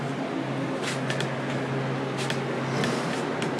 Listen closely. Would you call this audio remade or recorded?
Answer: recorded